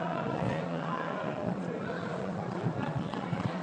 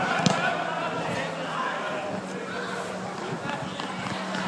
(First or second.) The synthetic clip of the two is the first